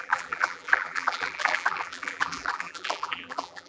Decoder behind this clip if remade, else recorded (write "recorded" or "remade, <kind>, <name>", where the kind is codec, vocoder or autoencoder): remade, vocoder, BigVGAN v2